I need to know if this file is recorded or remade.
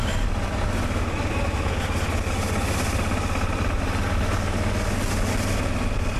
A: recorded